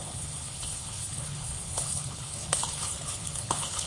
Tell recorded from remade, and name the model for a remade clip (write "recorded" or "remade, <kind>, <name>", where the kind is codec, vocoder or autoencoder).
remade, codec, HILCodec